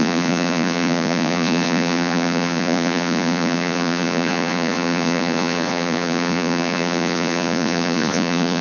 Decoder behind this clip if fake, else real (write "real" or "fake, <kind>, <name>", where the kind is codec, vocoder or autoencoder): fake, vocoder, Vocos